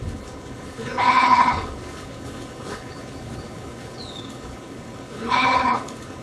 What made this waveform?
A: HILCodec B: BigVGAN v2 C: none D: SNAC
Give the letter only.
A